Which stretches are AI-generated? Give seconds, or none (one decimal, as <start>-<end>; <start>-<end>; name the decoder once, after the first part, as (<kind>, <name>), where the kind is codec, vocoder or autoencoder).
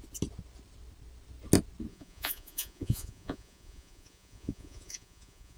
1.9-5.6 (vocoder, Vocos)